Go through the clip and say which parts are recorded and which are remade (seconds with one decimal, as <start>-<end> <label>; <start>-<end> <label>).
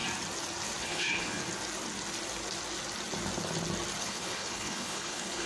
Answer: 0.0-0.8 recorded; 0.8-1.4 remade; 1.4-4.0 recorded; 4.0-5.5 remade